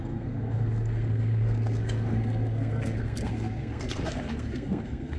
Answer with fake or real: fake